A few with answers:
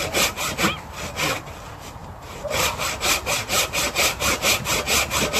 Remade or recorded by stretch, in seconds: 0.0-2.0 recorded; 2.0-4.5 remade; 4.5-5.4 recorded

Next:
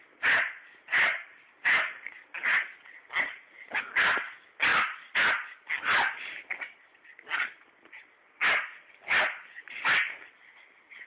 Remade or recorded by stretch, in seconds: 0.0-11.1 recorded

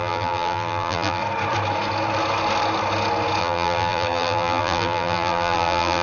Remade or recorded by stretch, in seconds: 0.0-1.2 remade; 1.2-3.4 recorded; 3.4-6.0 remade

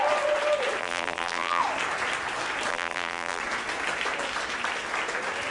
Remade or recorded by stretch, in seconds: 0.0-0.8 recorded; 0.8-1.6 remade; 1.6-2.7 recorded; 2.7-3.4 remade; 3.4-5.5 recorded

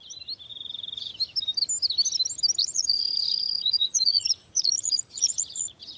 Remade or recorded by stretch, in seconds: 0.0-0.5 recorded; 0.5-1.1 remade; 1.1-2.6 recorded; 2.6-6.0 remade

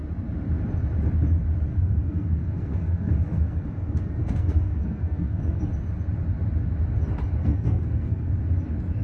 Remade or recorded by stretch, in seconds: 0.0-1.7 recorded; 1.7-5.6 remade; 5.6-7.4 recorded; 7.4-8.3 remade; 8.3-9.0 recorded

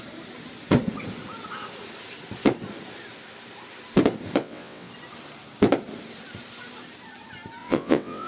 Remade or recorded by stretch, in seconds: 0.0-4.4 recorded; 4.4-4.9 remade; 4.9-7.6 recorded; 7.6-8.3 remade

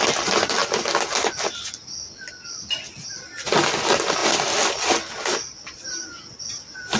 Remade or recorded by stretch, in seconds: 0.0-7.0 recorded